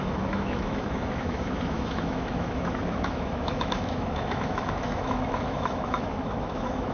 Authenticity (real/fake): fake